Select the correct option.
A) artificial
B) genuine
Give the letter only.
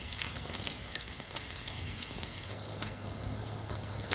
A